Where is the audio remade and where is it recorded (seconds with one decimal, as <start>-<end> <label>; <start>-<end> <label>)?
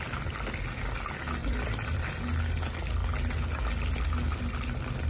0.0-1.4 recorded; 1.4-2.0 remade; 2.0-5.1 recorded